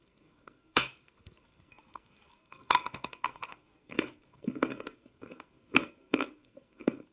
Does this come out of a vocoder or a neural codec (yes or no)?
yes